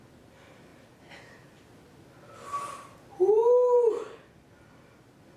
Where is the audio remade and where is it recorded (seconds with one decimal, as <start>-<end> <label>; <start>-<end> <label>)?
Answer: 0.0-5.4 recorded

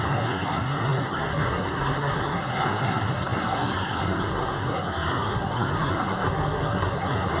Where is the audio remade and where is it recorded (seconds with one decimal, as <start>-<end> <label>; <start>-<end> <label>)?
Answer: 0.0-7.4 remade

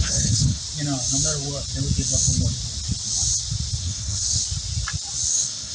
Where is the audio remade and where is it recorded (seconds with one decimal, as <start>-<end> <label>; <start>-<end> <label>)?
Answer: 0.0-0.6 remade; 0.6-3.8 recorded; 3.8-4.4 remade; 4.4-5.3 recorded; 5.3-5.7 remade

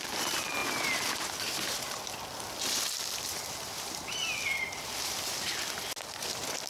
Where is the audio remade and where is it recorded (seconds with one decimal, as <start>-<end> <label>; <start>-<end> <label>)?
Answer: 0.0-6.7 recorded

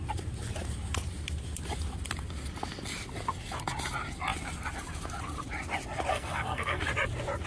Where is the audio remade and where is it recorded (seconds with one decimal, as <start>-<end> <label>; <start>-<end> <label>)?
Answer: 0.0-6.1 recorded; 6.1-6.8 remade; 6.8-7.5 recorded

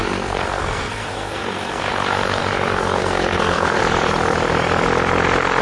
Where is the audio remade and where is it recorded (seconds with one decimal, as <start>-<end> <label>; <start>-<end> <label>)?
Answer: 0.0-1.9 remade; 1.9-3.0 recorded; 3.0-3.8 remade; 3.8-5.6 recorded

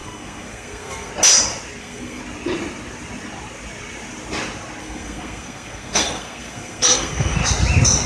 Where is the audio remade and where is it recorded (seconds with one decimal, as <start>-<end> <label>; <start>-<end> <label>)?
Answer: 0.0-1.1 remade; 1.1-1.8 recorded; 1.8-2.2 remade; 2.2-4.8 recorded; 4.8-7.4 remade; 7.4-8.1 recorded

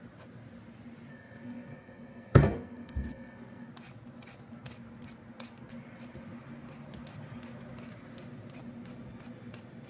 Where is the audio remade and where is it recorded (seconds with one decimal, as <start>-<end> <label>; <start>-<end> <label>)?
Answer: 0.0-1.1 recorded; 1.1-3.7 remade; 3.7-9.9 recorded